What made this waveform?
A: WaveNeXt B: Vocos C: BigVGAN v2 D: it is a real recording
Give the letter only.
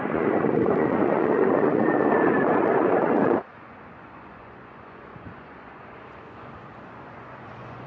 B